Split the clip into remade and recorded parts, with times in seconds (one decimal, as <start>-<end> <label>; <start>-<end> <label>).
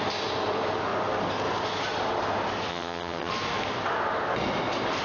0.0-2.7 recorded; 2.7-3.3 remade; 3.3-5.0 recorded